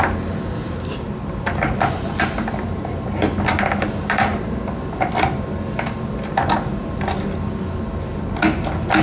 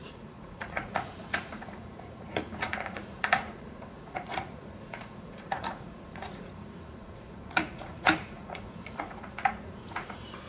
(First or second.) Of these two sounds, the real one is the first